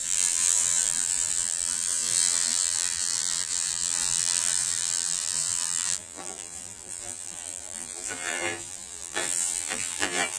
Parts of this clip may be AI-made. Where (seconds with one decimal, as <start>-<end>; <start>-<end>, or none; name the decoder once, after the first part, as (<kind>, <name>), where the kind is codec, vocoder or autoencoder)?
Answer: 0.0-10.4 (vocoder, BigVGAN v2)

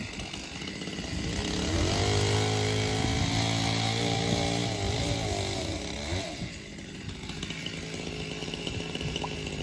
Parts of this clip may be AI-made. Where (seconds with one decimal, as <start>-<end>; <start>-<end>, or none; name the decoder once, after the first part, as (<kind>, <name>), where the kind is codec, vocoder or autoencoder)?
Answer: 6.7-7.6 (vocoder, BigVGAN v2); 8.4-9.2

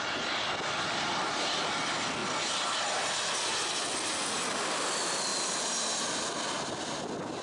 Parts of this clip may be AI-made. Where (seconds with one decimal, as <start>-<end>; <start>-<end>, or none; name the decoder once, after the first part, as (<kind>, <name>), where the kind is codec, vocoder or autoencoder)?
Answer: 1.1-1.8 (vocoder, BigVGAN v2)

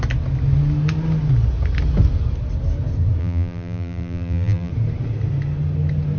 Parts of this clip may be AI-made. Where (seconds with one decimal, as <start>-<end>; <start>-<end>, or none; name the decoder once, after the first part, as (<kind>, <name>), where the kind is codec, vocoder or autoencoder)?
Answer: 3.2-4.7 (vocoder, BigVGAN v2)

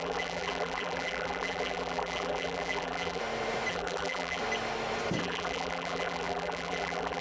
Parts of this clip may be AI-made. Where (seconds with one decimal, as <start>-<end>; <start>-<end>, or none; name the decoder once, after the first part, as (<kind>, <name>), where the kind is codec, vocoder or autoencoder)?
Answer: 0.0-3.2 (vocoder, BigVGAN v2); 3.7-4.4; 5.2-7.2

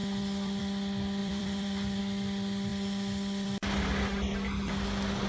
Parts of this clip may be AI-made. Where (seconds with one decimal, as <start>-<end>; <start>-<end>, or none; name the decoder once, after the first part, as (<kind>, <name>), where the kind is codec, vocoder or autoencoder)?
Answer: 1.2-2.0 (vocoder, BigVGAN v2)

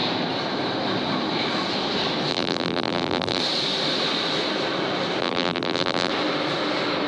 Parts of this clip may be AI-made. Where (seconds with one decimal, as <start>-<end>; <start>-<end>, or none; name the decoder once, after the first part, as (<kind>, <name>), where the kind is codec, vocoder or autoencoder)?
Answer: 2.3-3.4 (vocoder, BigVGAN v2); 5.2-6.1